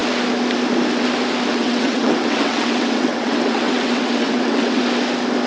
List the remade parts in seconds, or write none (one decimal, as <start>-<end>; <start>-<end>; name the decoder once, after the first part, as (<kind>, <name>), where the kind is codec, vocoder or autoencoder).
1.5-4.8 (vocoder, WaveNeXt)